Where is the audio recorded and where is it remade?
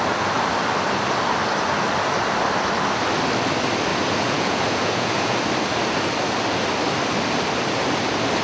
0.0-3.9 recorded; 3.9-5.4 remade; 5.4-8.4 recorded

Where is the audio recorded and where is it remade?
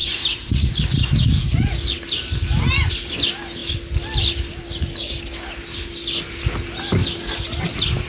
0.0-0.7 remade; 0.7-8.1 recorded